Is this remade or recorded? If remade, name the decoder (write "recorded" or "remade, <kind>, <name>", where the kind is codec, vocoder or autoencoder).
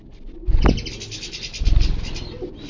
recorded